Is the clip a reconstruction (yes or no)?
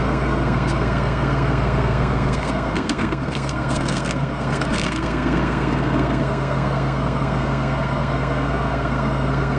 yes